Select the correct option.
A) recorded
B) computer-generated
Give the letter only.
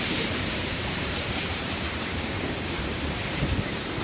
B